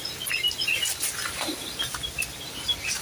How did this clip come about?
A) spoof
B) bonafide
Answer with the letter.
B